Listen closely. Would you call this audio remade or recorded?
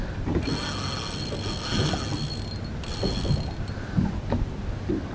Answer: recorded